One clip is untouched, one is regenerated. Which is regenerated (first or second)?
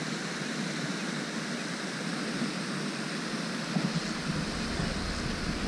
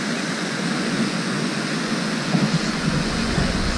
second